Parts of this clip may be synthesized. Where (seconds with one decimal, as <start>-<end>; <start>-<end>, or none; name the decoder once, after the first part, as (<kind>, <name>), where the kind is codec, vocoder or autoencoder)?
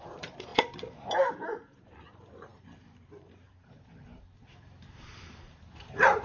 0.0-6.2 (vocoder, BigVGAN v2)